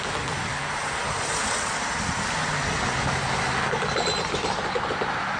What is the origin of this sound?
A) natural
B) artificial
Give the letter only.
A